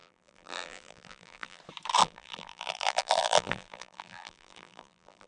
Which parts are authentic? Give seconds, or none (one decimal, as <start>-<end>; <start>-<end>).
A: 1.6-2.0